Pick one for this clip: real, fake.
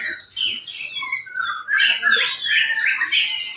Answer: real